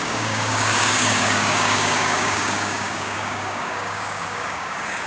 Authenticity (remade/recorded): remade